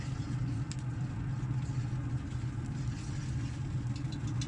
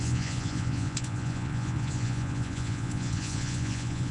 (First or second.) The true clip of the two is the first